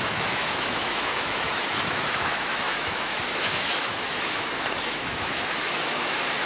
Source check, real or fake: fake